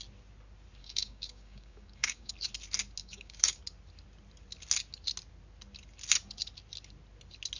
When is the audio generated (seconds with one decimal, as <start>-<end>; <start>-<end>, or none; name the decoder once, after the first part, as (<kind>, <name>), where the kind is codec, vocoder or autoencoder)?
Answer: 0.8-2.3 (codec, DAC); 3.0-3.6